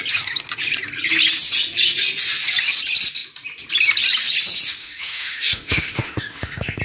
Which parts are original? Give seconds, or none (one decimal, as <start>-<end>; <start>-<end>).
0.0-4.8